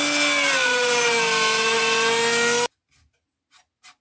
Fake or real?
real